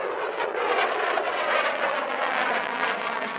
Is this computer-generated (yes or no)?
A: yes